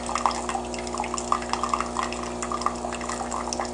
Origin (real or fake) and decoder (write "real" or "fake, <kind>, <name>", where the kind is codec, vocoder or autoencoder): real